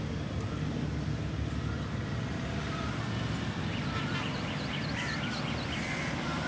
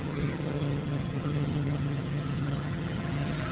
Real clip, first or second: first